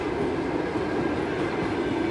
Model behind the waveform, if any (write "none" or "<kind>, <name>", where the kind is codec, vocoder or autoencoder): none